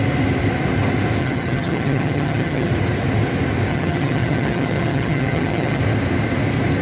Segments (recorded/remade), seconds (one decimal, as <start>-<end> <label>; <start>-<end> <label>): 0.0-1.2 recorded; 1.2-2.7 remade; 2.7-3.7 recorded; 3.7-5.8 remade; 5.8-6.8 recorded